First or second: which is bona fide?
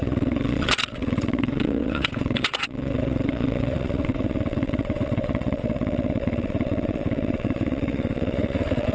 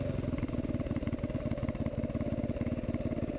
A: second